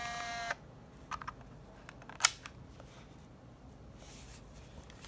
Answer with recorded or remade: recorded